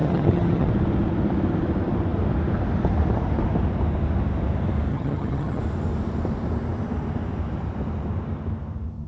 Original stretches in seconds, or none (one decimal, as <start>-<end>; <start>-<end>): 0.7-4.9; 5.6-9.1